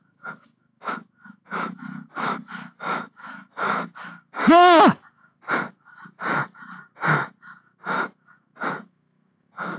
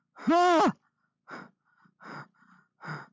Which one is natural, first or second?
second